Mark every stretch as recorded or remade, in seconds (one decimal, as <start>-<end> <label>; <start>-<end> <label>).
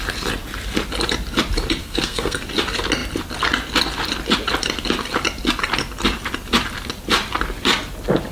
0.0-1.8 recorded; 1.8-2.4 remade; 2.4-8.3 recorded